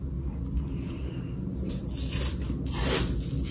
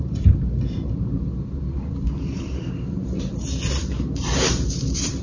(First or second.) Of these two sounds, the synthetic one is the second